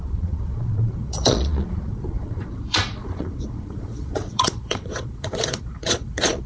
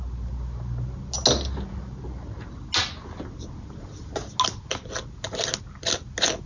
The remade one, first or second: first